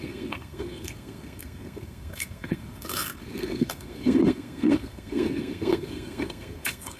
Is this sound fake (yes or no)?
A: yes